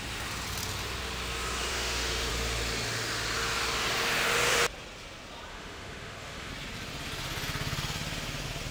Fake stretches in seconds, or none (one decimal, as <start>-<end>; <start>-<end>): 1.7-2.3; 5.5-6.5

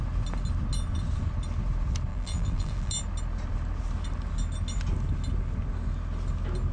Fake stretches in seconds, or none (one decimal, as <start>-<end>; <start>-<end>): 2.1-2.9

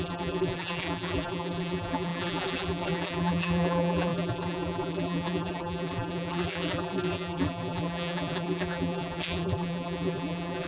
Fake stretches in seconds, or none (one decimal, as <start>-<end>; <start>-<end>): 0.0-10.7